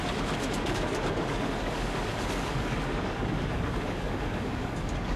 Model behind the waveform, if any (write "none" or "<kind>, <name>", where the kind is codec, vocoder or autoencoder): codec, DAC